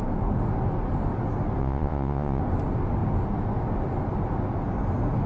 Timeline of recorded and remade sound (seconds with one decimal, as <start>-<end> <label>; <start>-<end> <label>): 0.0-1.6 recorded; 1.6-2.4 remade; 2.4-5.3 recorded